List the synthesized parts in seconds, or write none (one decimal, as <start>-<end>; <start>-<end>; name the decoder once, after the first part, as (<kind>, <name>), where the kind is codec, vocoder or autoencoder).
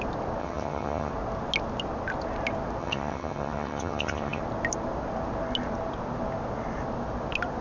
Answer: 0.4-1.1 (vocoder, HiFi-GAN); 2.8-4.4